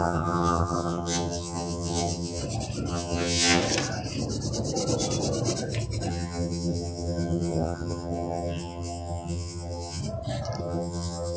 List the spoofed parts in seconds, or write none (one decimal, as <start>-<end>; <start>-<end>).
0.0-2.4; 2.9-3.6; 6.1-10.0; 10.6-11.4